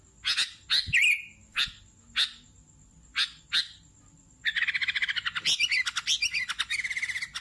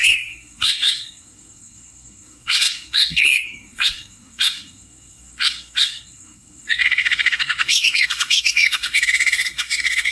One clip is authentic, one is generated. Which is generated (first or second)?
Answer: second